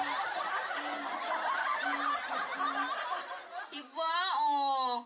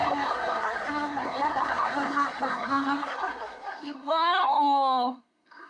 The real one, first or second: first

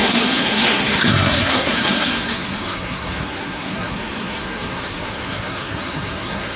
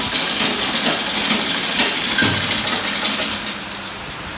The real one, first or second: second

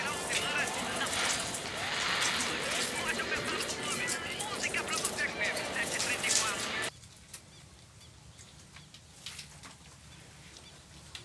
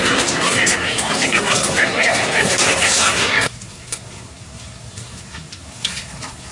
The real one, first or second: first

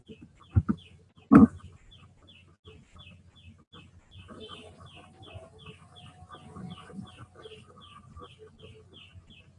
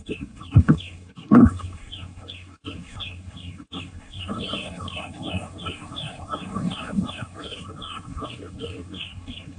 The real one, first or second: first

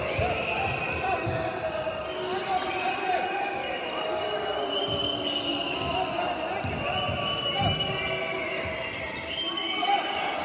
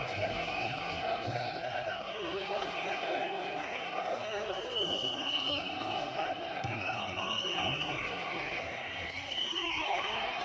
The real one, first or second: first